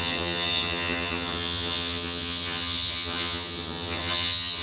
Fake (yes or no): yes